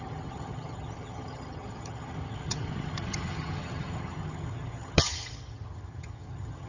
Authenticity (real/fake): fake